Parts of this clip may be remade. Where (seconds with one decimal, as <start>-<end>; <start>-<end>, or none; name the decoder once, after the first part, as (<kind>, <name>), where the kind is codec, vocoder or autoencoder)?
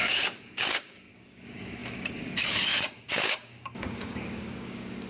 0.0-5.1 (codec, DAC)